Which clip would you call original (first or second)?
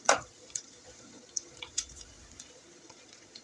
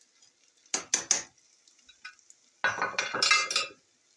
second